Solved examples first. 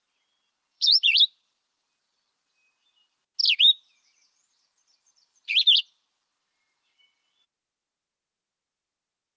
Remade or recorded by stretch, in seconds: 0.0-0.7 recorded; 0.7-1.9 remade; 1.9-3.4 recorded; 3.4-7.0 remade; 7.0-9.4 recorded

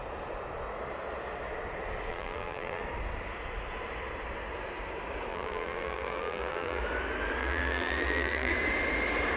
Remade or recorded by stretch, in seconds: 0.0-2.1 recorded; 2.1-2.8 remade; 2.8-5.3 recorded; 5.3-6.8 remade; 6.8-7.4 recorded; 7.4-8.5 remade; 8.5-9.4 recorded

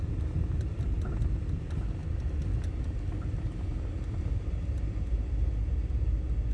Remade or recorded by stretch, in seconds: 0.0-0.7 recorded; 0.7-1.4 remade; 1.4-3.7 recorded; 3.7-5.5 remade; 5.5-6.5 recorded

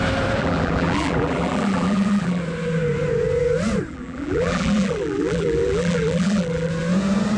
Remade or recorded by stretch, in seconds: 0.0-0.4 recorded; 0.4-2.4 remade; 2.4-3.9 recorded; 3.9-6.7 remade; 6.7-7.4 recorded

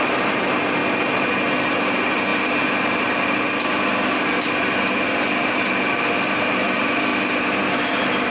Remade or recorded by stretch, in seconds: 0.0-0.8 remade; 0.8-1.5 recorded; 1.5-7.1 remade; 7.1-7.7 recorded; 7.7-8.3 remade

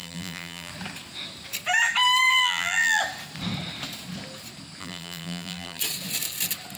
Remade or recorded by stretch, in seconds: 0.0-0.7 remade; 0.7-2.3 recorded; 2.3-3.0 remade; 3.0-4.8 recorded; 4.8-5.8 remade; 5.8-6.8 recorded